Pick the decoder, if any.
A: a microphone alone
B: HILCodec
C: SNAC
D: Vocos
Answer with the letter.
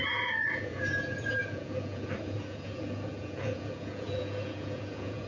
D